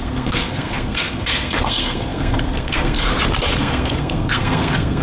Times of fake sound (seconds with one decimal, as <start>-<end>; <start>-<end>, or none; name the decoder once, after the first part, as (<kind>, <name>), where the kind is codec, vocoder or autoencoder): 0.0-3.1 (codec, SNAC); 3.6-5.0